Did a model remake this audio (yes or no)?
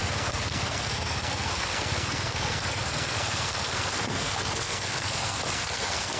yes